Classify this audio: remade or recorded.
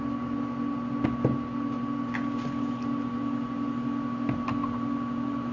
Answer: recorded